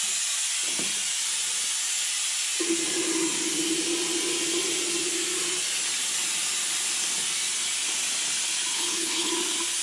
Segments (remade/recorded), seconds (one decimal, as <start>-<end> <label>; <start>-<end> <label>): 0.0-8.7 recorded; 8.7-9.3 remade; 9.3-9.8 recorded